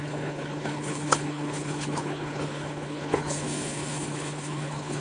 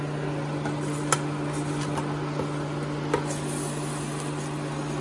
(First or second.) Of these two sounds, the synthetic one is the first